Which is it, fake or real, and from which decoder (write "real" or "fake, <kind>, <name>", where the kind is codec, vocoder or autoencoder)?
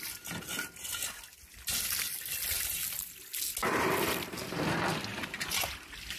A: real